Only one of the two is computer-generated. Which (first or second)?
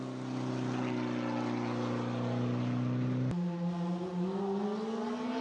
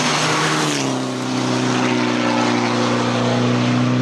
second